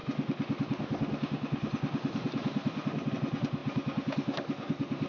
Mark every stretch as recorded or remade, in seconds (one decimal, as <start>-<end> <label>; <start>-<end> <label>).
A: 0.0-5.1 recorded